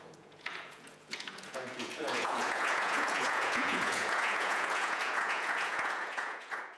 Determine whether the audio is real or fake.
fake